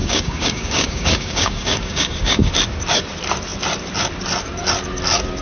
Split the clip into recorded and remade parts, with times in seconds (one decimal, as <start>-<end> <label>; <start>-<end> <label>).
0.0-2.5 remade; 2.5-5.4 recorded